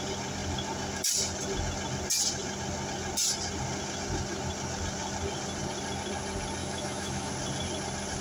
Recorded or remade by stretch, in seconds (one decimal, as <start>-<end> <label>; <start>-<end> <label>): 0.0-6.6 recorded; 6.6-7.3 remade; 7.3-8.2 recorded